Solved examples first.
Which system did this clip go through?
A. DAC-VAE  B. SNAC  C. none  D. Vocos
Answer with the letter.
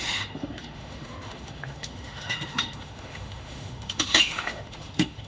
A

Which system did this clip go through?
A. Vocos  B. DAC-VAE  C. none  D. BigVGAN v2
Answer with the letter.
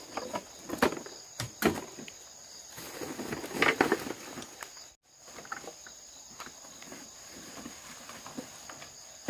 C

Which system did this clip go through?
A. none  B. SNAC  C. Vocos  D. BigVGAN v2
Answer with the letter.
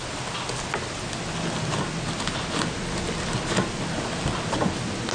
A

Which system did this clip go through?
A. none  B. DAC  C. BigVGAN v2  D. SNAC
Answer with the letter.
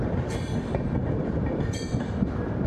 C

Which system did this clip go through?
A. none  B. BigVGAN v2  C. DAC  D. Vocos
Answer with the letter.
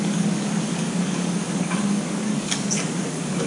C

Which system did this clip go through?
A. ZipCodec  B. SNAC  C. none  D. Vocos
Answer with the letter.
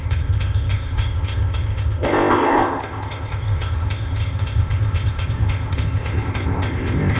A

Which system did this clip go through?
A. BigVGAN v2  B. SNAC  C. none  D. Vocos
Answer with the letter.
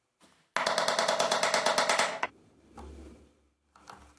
C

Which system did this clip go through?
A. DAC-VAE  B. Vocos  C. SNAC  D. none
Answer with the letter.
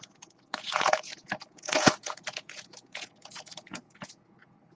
B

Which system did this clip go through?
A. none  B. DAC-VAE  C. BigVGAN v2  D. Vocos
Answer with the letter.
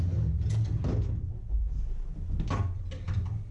A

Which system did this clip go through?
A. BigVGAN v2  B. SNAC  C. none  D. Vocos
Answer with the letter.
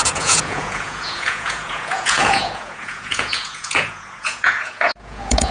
D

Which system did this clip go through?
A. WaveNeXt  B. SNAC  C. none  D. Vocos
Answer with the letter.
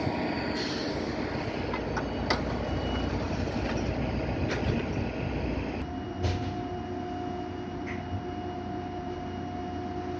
C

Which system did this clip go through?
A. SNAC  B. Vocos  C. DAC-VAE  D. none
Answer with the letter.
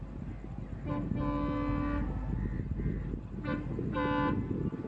D